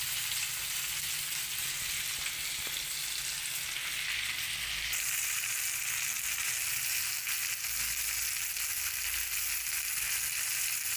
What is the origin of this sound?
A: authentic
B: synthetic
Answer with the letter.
A